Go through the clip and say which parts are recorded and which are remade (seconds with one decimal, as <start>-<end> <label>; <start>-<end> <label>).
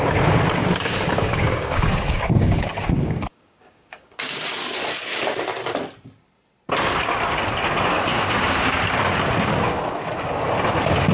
0.0-0.6 recorded; 0.6-4.3 remade; 4.3-8.1 recorded; 8.1-8.8 remade; 8.8-11.1 recorded